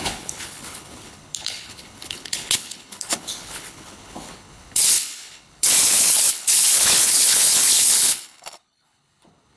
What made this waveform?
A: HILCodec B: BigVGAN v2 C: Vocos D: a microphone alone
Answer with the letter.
A